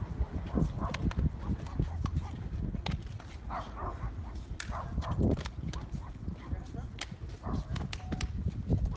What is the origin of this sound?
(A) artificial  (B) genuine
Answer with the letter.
B